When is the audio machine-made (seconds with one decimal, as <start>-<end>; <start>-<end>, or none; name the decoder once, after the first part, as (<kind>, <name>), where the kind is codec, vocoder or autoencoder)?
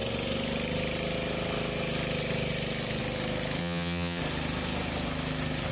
3.6-4.2 (vocoder, HiFi-GAN)